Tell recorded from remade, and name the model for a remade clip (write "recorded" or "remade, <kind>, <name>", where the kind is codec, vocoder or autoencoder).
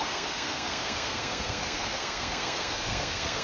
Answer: remade, codec, SNAC